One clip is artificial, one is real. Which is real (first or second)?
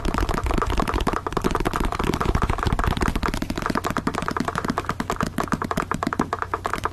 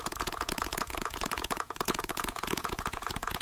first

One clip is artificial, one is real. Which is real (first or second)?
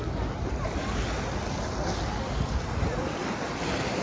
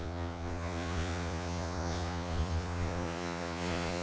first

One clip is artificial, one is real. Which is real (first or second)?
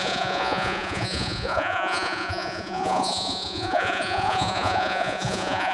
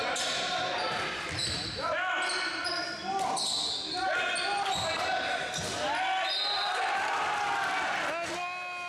second